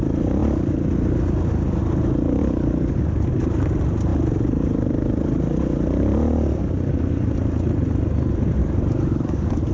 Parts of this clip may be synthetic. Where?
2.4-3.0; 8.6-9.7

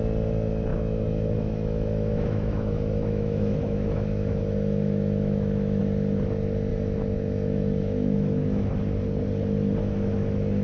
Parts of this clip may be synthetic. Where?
0.7-5.8; 6.7-8.7

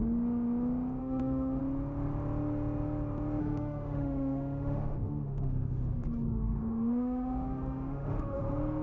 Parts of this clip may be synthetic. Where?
1.0-1.6; 3.4-8.4

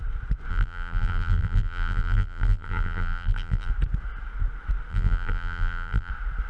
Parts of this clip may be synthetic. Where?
0.5-3.7; 4.9-6.1

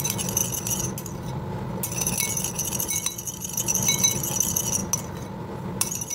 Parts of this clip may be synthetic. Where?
none